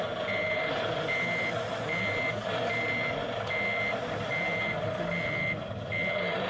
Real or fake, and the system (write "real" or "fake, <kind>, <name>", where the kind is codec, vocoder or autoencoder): real